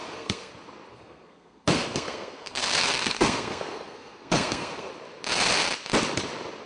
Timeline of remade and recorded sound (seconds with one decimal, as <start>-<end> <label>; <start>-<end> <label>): 0.0-0.5 remade; 0.5-0.9 recorded; 0.9-4.9 remade; 4.9-6.7 recorded